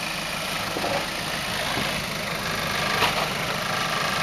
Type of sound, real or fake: real